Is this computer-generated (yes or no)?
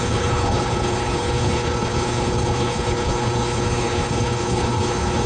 yes